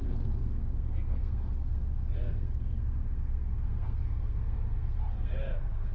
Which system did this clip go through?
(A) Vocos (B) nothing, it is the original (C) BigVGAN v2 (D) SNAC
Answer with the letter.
D